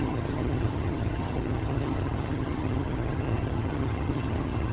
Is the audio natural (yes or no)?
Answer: no